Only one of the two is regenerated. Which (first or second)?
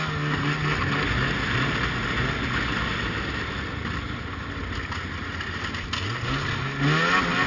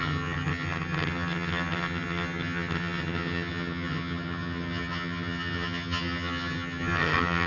second